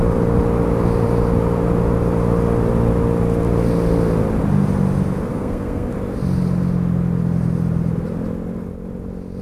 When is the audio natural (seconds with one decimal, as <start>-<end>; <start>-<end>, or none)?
0.0-5.3; 5.9-9.4